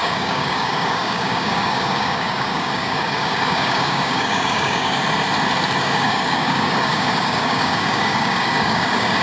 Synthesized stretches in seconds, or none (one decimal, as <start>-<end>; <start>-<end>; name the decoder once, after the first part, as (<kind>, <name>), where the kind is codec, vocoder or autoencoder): 0.0-5.0 (codec, DAC); 5.8-9.2